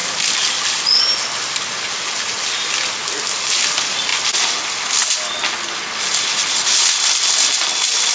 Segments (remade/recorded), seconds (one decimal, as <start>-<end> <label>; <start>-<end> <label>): 0.0-8.1 recorded